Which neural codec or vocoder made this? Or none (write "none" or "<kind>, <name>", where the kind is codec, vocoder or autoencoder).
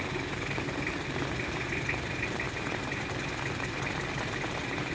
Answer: none